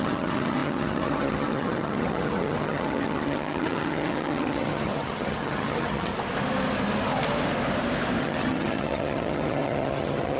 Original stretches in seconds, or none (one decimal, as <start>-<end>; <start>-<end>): 6.1-8.2